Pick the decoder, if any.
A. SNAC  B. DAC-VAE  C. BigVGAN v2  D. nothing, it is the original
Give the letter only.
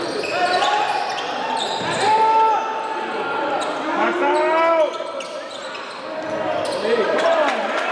D